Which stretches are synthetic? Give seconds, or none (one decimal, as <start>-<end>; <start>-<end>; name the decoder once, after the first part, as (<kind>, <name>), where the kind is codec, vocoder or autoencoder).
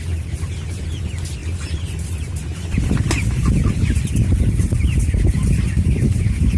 none